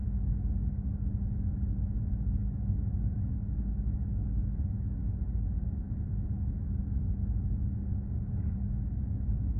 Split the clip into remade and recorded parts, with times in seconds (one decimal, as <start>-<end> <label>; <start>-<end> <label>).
0.0-2.4 recorded; 2.4-5.0 remade; 5.0-8.3 recorded; 8.3-9.6 remade